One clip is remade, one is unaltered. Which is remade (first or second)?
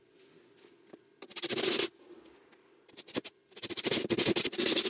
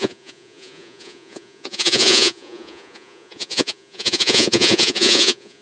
second